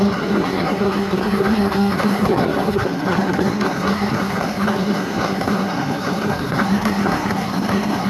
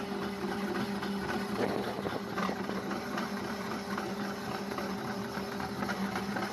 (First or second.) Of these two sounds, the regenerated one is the first